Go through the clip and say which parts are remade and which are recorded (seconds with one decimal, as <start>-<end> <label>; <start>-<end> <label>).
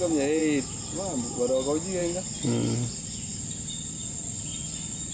0.0-5.1 recorded